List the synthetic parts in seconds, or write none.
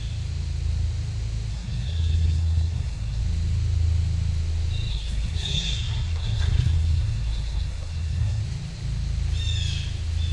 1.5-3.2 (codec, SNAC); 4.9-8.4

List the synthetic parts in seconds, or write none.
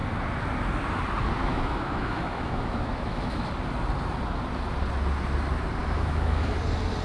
1.4-3.5 (autoencoder, DAC-VAE); 5.8-6.5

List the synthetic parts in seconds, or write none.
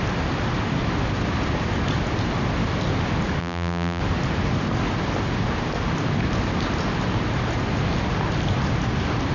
3.4-4.0 (vocoder, BigVGAN v2)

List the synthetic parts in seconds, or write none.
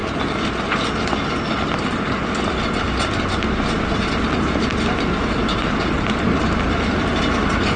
none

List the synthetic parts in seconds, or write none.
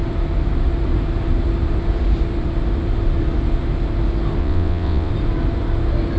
4.4-5.1 (vocoder, WaveNeXt)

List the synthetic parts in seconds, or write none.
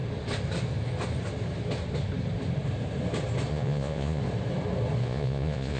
3.5-4.2 (vocoder, Vocos); 5.0-5.8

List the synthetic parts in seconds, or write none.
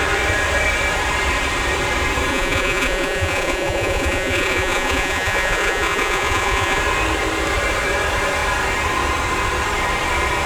2.3-6.8 (vocoder, Vocos)